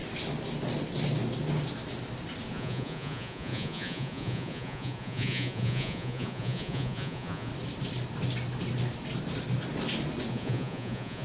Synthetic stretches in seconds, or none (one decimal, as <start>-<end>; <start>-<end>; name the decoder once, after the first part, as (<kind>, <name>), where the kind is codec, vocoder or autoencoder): 2.5-7.5 (vocoder, Vocos); 10.3-11.2